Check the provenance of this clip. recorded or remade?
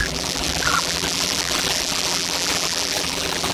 remade